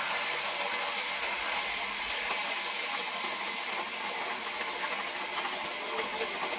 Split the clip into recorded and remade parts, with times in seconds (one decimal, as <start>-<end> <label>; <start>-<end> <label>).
0.0-6.6 recorded